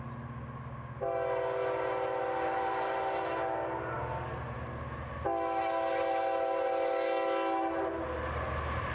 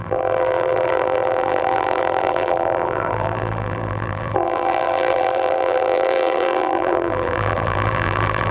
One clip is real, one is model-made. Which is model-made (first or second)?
second